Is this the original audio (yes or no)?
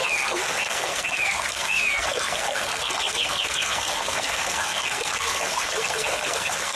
no